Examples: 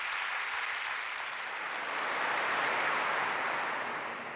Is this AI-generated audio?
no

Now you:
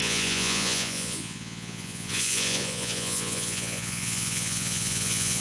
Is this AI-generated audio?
yes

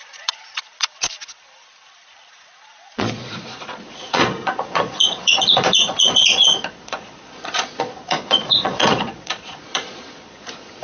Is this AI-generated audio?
yes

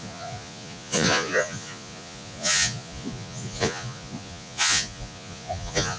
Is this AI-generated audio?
yes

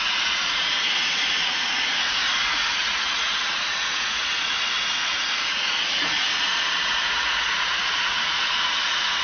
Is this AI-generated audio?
yes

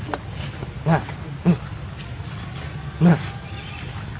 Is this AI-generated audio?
no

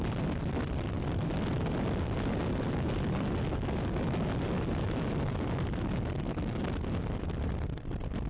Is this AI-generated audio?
no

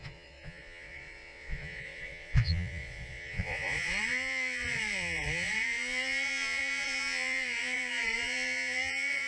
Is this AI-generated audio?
yes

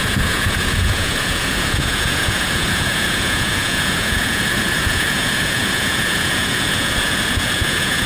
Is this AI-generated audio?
yes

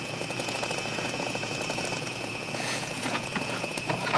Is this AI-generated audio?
yes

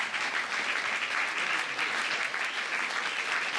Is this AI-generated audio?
no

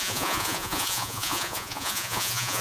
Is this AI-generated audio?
yes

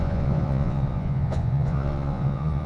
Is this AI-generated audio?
yes